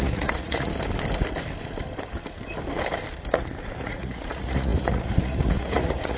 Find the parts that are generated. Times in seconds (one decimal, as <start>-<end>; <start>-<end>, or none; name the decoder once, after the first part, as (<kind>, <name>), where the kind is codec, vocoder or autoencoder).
0.0-0.7 (vocoder, Vocos); 3.8-6.2